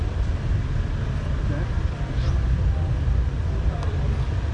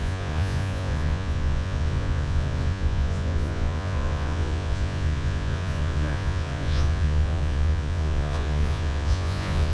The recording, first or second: first